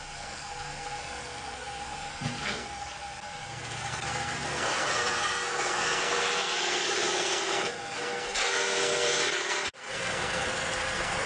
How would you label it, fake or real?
fake